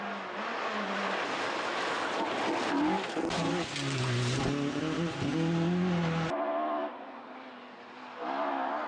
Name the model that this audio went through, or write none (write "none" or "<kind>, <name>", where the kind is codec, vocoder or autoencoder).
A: none